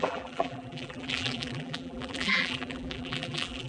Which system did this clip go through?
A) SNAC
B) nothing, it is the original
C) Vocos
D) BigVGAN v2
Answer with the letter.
D